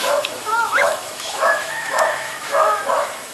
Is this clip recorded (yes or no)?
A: no